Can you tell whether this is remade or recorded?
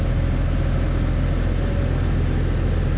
recorded